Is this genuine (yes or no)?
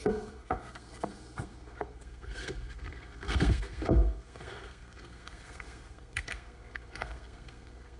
no